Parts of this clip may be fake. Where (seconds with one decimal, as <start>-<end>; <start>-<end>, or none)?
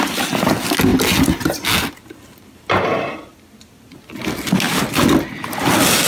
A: none